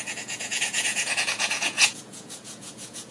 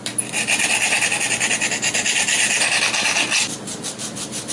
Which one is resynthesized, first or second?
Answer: first